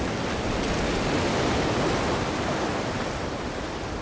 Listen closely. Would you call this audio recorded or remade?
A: recorded